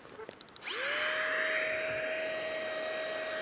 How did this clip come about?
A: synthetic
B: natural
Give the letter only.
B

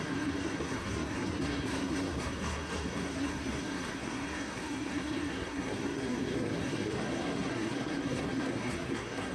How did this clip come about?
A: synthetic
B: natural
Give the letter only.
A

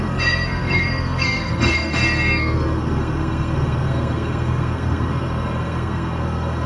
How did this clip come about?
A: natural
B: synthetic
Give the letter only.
B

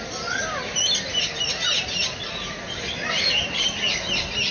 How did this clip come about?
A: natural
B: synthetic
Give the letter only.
A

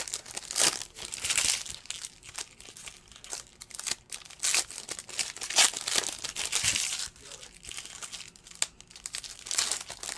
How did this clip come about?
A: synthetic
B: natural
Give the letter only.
B